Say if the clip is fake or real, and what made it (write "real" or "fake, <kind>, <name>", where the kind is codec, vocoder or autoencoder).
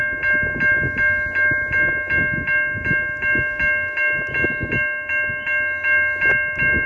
real